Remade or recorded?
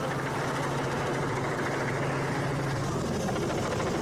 recorded